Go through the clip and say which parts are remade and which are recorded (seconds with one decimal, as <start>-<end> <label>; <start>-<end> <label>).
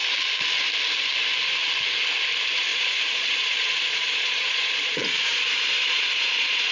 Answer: 0.0-2.7 recorded; 2.7-6.7 remade